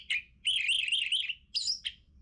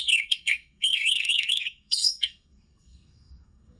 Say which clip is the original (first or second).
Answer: first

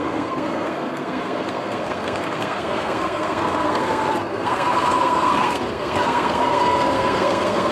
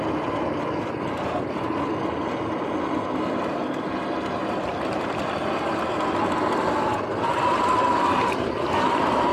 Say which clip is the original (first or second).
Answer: second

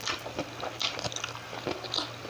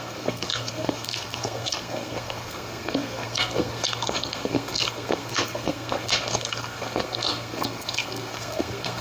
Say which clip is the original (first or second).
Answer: first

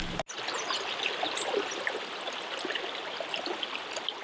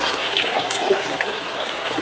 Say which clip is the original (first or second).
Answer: first